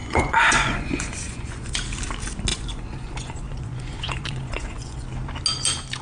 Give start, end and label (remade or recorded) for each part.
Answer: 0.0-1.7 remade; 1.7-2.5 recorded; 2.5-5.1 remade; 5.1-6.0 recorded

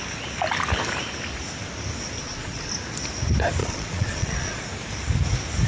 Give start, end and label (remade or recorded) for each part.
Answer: 0.0-2.2 recorded; 2.2-2.7 remade; 2.7-3.6 recorded; 3.6-4.6 remade; 4.6-5.7 recorded

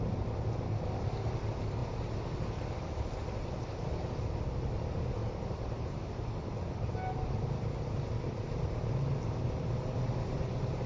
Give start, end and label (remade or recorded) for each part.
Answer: 0.0-5.2 recorded; 5.2-6.3 remade; 6.3-10.9 recorded

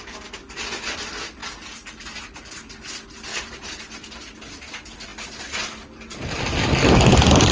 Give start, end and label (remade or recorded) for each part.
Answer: 0.0-3.3 recorded; 3.3-4.3 remade; 4.3-7.5 recorded